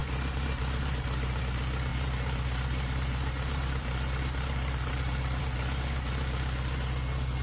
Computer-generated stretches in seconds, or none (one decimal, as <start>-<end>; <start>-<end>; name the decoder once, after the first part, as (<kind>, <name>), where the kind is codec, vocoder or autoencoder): 0.0-1.4 (vocoder, BigVGAN v2); 1.9-5.4